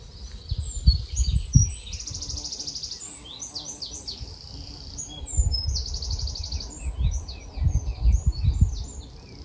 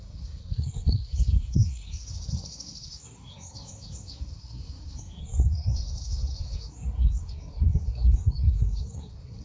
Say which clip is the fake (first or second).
second